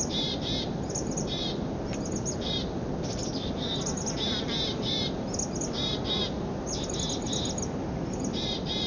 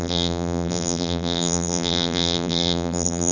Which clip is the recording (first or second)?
first